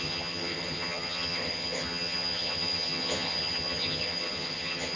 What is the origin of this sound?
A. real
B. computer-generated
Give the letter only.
B